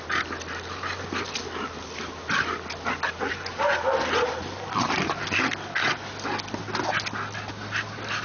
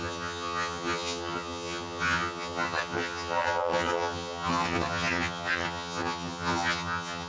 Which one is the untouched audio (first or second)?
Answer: first